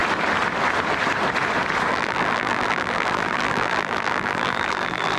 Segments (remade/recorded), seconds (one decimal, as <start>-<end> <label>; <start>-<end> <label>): 0.0-1.9 recorded; 1.9-5.2 remade